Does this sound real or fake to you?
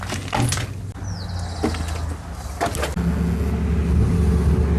real